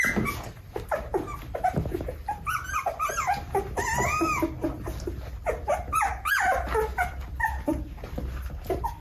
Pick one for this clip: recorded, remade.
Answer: recorded